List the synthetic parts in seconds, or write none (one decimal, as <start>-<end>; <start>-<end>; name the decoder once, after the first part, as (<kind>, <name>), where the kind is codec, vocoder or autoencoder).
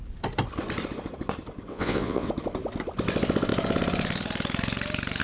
1.7-2.3 (vocoder, WaveNeXt)